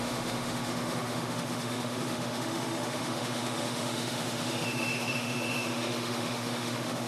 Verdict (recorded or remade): remade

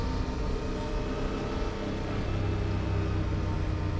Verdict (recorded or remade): recorded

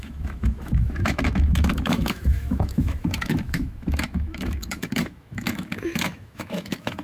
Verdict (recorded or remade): remade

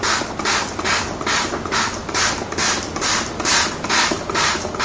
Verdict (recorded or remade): recorded